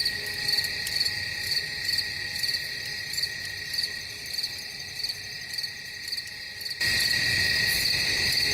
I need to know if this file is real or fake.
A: real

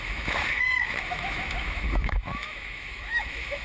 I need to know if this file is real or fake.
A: fake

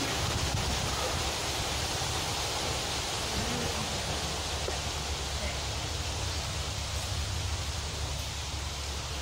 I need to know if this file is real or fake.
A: real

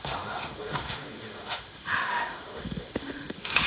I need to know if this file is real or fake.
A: fake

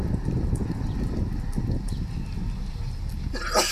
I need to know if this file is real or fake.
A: real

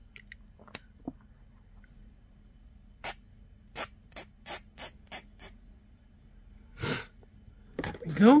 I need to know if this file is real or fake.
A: real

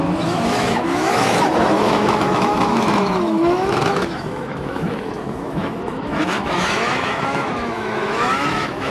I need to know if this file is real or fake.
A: fake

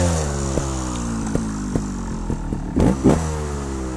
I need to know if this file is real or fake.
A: real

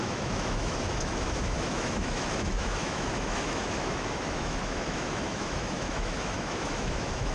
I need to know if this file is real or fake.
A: fake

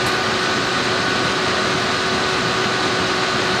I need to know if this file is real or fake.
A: real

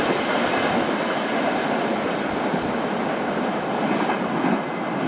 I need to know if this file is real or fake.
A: real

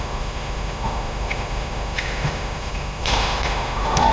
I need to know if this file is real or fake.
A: fake